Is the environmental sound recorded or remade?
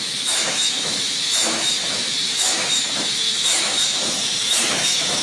remade